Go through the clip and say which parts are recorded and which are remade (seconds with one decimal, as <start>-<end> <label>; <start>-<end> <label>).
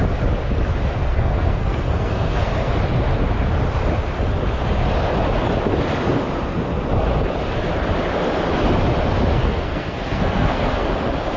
0.0-1.1 recorded; 1.1-2.7 remade; 2.7-9.3 recorded; 9.3-10.9 remade; 10.9-11.4 recorded